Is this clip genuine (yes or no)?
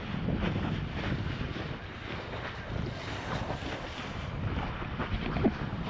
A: yes